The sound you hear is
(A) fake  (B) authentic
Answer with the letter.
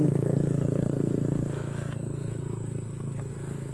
A